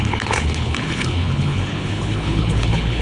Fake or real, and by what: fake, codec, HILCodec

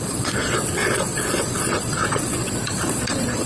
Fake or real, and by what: fake, vocoder, Vocos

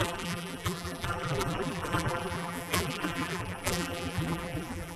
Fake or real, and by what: fake, vocoder, BigVGAN v2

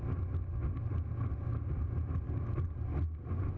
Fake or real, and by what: real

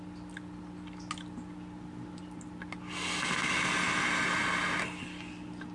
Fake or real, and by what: real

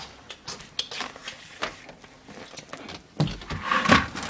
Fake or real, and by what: real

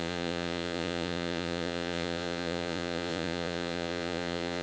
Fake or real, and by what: fake, vocoder, Vocos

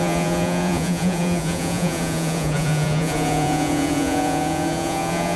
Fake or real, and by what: fake, vocoder, Vocos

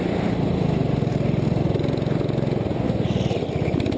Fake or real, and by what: real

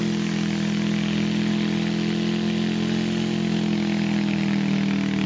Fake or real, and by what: real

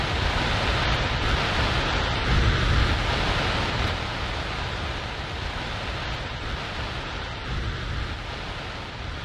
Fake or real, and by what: real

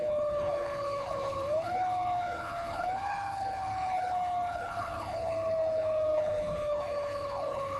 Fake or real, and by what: fake, codec, HILCodec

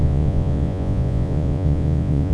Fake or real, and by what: fake, vocoder, Vocos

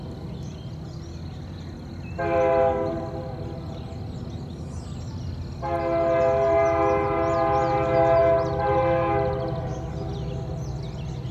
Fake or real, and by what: real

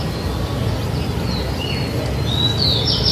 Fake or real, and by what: real